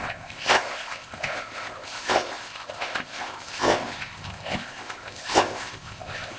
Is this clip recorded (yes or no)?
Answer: no